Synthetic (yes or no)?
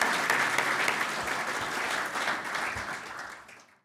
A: no